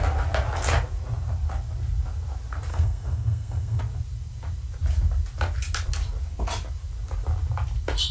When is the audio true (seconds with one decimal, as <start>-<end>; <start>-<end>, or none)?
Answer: 0.0-2.7; 3.8-8.1